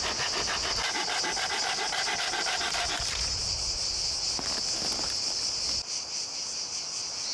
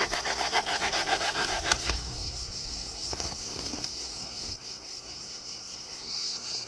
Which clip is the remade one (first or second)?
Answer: second